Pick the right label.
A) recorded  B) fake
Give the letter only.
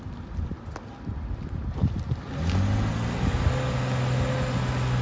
A